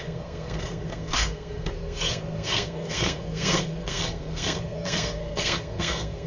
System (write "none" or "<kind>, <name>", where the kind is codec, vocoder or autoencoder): codec, SNAC